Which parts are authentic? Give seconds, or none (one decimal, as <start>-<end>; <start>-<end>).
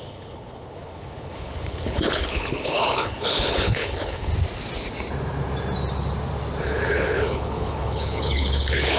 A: 4.3-6.6